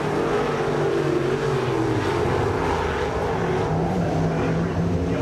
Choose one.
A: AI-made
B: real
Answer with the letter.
B